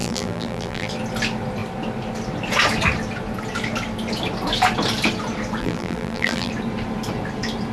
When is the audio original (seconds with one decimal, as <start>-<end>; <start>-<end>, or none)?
0.9-5.6; 6.5-7.7